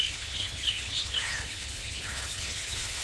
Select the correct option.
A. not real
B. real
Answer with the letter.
A